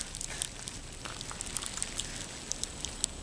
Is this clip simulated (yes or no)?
no